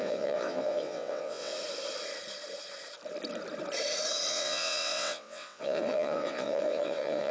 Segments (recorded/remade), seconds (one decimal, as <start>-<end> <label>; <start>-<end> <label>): 0.0-1.5 remade; 1.5-4.3 recorded; 4.3-7.3 remade